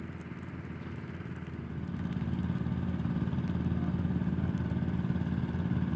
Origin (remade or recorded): recorded